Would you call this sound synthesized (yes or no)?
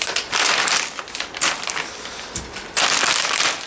no